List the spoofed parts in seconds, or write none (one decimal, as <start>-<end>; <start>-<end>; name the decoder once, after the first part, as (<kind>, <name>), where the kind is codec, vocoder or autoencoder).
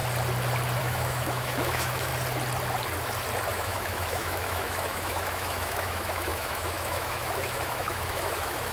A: 0.8-2.1 (autoencoder, DAC-VAE); 3.5-8.7